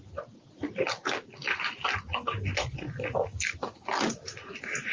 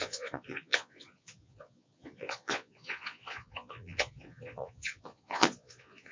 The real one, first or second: first